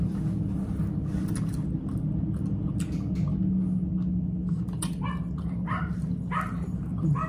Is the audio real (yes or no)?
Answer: yes